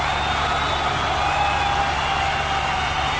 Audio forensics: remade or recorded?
recorded